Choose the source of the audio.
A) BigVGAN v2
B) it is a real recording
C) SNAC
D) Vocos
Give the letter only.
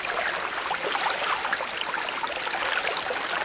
B